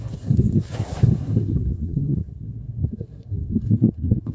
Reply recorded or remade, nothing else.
remade